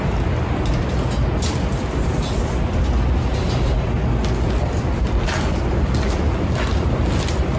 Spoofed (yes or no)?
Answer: no